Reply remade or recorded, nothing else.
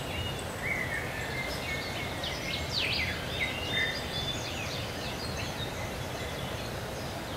recorded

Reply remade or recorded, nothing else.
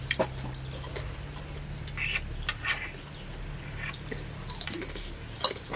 recorded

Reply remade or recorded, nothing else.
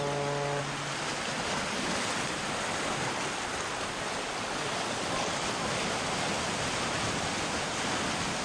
recorded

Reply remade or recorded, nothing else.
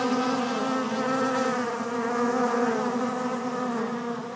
recorded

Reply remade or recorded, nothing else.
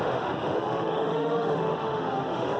remade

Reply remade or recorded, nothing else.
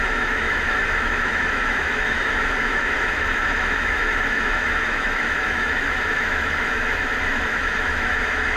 remade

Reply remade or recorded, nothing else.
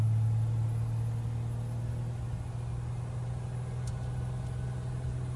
recorded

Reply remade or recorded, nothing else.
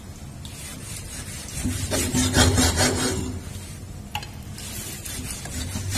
recorded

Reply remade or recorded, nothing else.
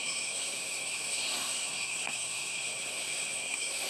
remade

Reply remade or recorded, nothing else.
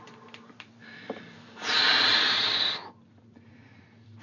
remade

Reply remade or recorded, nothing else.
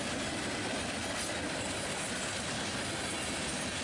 recorded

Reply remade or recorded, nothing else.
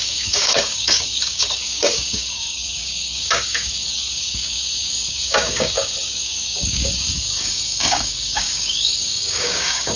remade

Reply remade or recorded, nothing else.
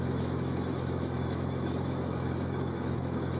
remade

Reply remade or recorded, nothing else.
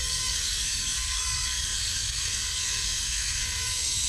remade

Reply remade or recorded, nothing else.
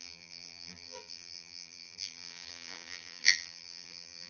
remade